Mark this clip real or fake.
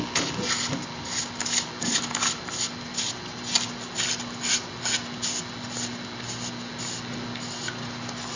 real